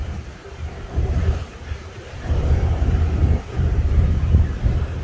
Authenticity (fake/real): fake